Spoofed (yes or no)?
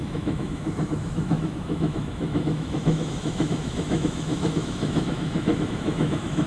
yes